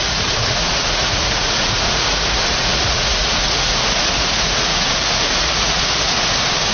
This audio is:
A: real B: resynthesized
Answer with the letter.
B